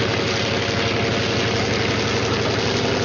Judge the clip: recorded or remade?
recorded